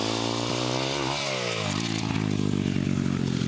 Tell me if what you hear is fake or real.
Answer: real